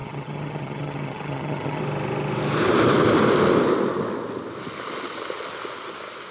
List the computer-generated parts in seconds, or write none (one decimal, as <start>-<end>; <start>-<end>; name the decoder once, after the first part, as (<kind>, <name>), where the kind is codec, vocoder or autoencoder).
0.0-1.8 (vocoder, HiFi-GAN)